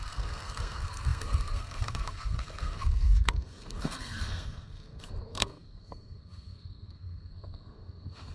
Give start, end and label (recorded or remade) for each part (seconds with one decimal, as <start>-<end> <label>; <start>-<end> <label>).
0.0-8.3 remade